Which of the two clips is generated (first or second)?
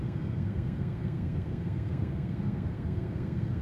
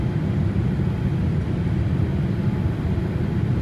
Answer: first